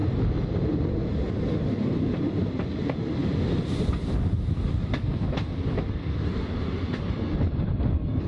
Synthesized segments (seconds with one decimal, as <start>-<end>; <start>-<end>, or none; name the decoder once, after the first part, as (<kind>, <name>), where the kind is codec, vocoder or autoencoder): 3.2-3.9 (vocoder, BigVGAN v2)